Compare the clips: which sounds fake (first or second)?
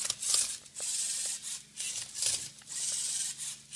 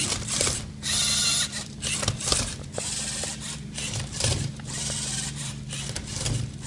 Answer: second